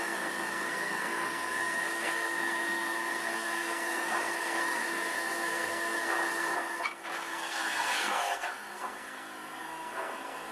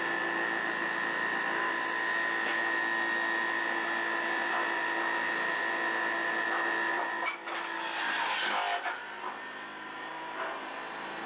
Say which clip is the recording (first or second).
second